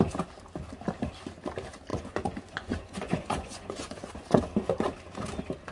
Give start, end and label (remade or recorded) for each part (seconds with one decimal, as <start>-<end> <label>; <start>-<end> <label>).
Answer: 0.0-1.9 recorded; 1.9-4.4 remade; 4.4-5.7 recorded